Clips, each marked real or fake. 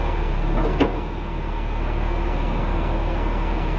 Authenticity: fake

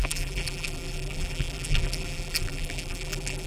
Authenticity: fake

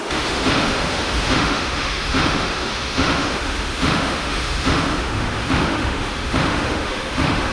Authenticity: fake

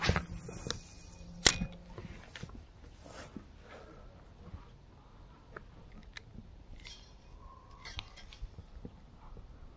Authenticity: real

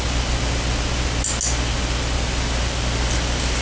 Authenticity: real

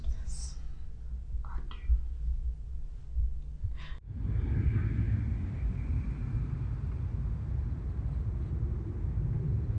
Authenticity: real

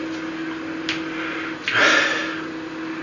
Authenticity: real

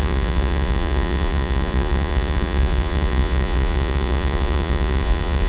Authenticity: fake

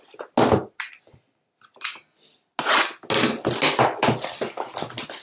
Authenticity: real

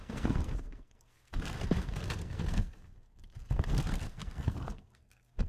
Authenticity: fake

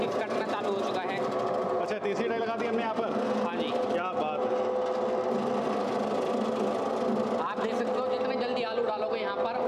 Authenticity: real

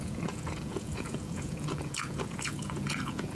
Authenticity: fake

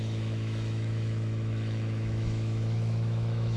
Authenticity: fake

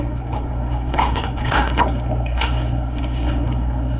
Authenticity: fake